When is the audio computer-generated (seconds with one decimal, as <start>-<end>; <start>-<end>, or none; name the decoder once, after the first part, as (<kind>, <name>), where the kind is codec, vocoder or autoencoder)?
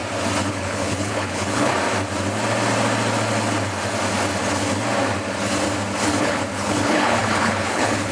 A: 0.5-1.7 (codec, HILCodec); 6.2-8.1